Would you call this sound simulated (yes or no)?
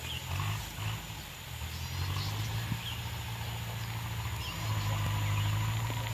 no